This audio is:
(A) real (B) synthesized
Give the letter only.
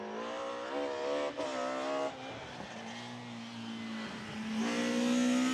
A